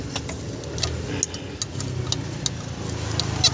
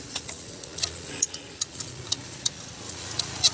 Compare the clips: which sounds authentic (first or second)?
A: first